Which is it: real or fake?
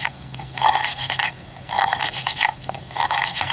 fake